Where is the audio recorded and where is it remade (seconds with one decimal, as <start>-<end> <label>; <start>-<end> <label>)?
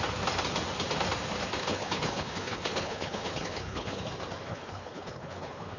0.0-1.6 recorded; 1.6-4.0 remade; 4.0-4.5 recorded; 4.5-5.8 remade